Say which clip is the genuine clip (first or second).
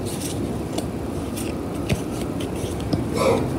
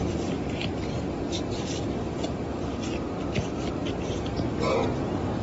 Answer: second